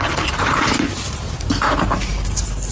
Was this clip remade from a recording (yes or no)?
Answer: no